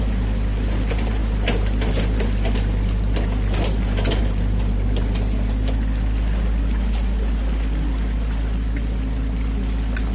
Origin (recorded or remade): recorded